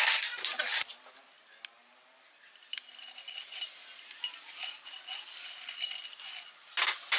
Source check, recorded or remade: recorded